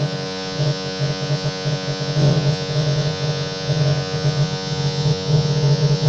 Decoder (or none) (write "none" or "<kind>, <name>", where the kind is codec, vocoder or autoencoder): vocoder, Vocos